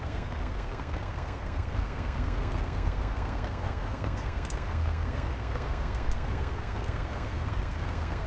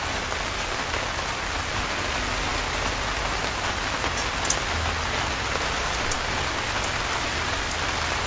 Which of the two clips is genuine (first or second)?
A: second